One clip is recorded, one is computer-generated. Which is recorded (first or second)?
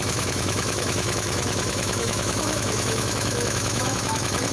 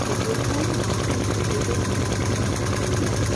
second